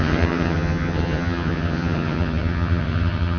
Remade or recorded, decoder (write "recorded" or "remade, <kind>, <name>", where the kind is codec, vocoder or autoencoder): remade, vocoder, HiFi-GAN